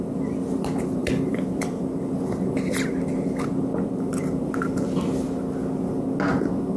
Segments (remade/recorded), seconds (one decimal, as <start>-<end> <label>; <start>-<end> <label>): 0.0-1.0 recorded; 1.0-1.8 remade; 1.8-6.8 recorded